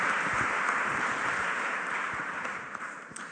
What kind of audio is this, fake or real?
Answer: fake